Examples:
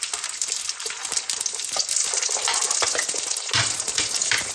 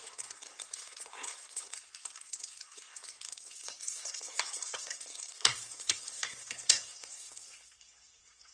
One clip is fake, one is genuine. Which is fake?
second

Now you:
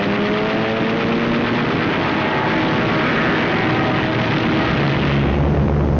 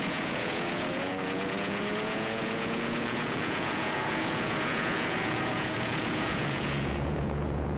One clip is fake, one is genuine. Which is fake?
second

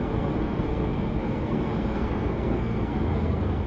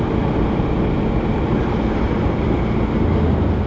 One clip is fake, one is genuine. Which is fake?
first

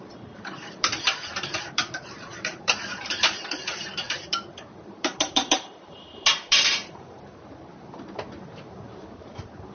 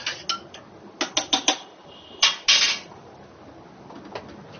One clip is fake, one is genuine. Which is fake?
first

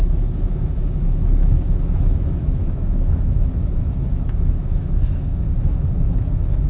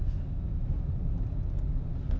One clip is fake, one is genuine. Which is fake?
first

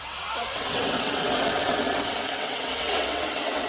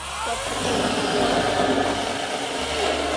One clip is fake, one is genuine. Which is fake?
first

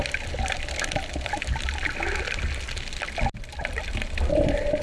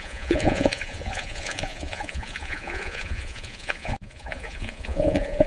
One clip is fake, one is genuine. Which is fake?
second